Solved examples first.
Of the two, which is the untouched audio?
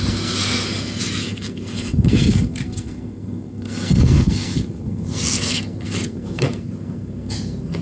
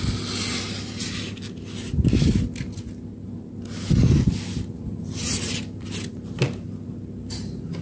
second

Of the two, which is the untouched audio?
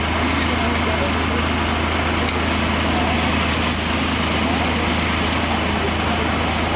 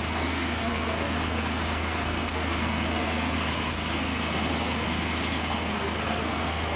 first